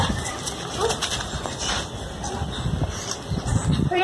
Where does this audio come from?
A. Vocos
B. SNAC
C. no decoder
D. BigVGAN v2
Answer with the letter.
D